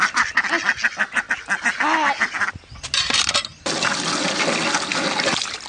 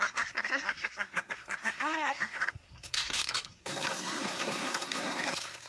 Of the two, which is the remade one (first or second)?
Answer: second